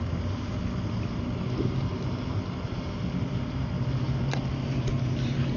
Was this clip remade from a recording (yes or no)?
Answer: no